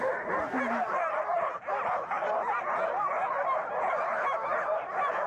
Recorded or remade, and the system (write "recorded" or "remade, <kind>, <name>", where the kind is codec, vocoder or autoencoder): recorded